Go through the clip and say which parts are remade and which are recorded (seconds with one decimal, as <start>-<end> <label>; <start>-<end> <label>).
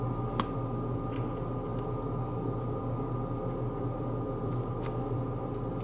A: 0.0-5.8 recorded